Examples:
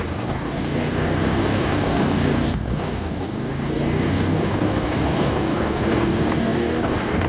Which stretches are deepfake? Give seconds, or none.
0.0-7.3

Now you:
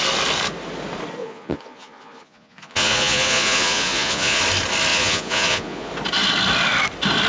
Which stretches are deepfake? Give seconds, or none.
1.2-4.4; 4.9-5.9

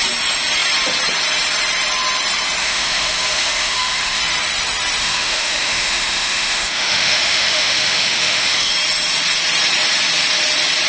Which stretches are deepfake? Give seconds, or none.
2.6-4.2; 5.0-8.7

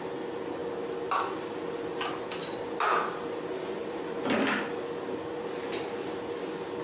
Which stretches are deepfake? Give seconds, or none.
none